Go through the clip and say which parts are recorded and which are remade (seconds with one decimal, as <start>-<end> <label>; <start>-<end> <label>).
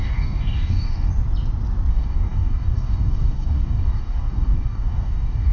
0.0-1.1 remade; 1.1-1.9 recorded; 1.9-5.5 remade